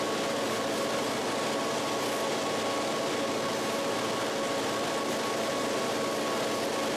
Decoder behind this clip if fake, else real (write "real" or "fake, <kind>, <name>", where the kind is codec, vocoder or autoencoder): real